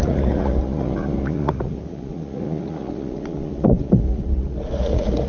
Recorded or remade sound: remade